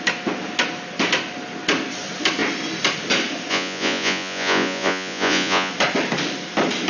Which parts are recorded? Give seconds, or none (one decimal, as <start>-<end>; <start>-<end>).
0.0-3.5; 5.7-6.9